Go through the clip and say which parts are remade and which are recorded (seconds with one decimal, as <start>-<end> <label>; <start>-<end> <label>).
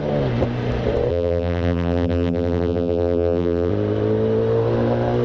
0.0-1.1 recorded; 1.1-3.7 remade; 3.7-5.2 recorded